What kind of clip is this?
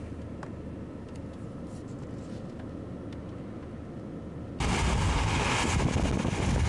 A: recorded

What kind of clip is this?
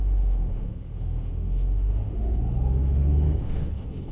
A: remade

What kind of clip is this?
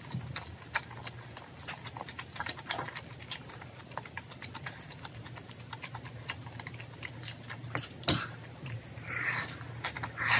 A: recorded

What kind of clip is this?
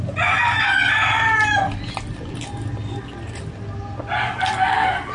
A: recorded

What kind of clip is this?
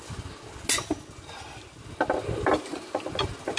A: recorded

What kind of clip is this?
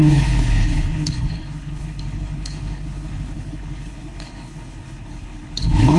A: remade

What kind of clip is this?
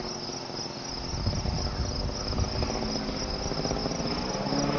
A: recorded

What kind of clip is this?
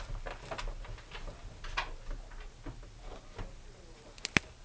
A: recorded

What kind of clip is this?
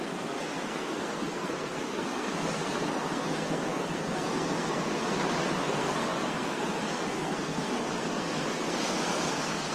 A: remade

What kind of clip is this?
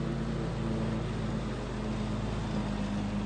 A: recorded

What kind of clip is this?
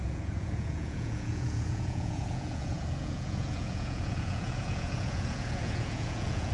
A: remade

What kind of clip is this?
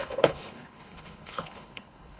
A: remade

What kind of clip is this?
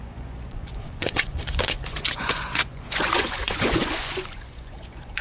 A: remade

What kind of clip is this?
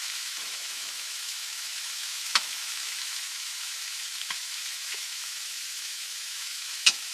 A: remade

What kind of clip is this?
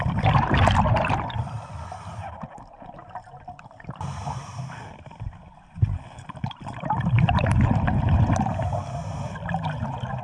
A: recorded